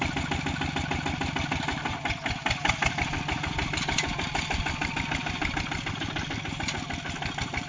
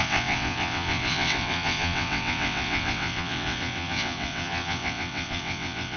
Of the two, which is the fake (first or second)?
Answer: second